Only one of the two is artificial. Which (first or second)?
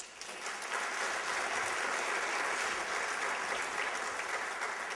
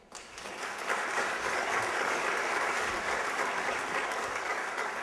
second